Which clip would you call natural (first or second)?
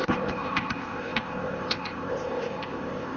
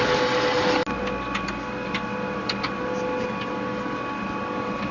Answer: second